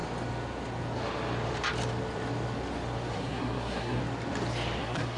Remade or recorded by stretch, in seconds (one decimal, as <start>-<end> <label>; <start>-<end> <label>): 0.0-3.1 recorded; 3.1-4.0 remade; 4.0-4.8 recorded; 4.8-5.2 remade